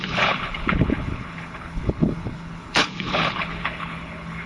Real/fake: fake